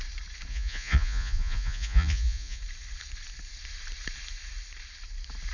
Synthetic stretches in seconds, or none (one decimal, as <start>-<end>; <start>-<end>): 0.5-2.6